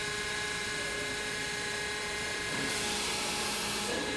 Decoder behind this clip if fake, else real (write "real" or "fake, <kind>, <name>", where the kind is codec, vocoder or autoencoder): fake, vocoder, BigVGAN v2